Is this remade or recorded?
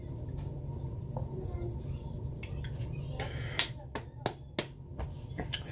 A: recorded